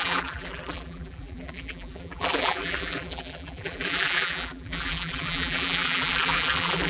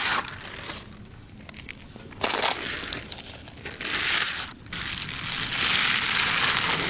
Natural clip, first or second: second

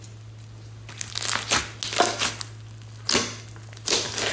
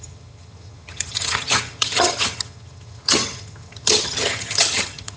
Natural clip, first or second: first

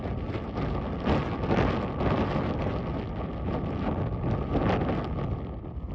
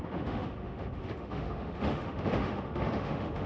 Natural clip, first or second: first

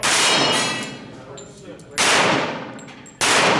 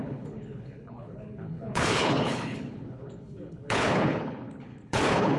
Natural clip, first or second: first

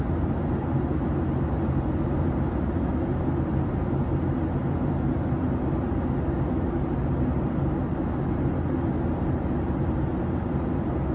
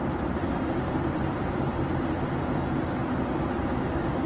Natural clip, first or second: first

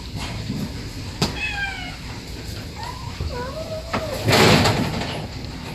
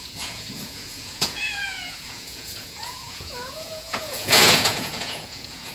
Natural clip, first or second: first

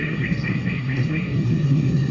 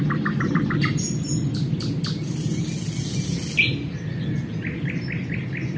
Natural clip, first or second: second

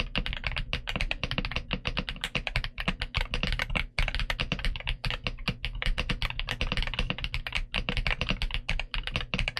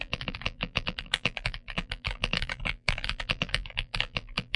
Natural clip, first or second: first